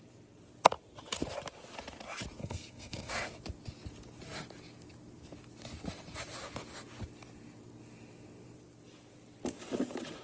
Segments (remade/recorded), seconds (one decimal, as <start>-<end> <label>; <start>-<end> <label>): 0.0-2.4 recorded; 2.4-3.1 remade; 3.1-10.2 recorded